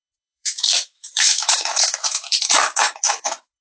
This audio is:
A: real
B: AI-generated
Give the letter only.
B